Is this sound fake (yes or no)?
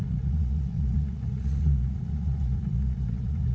yes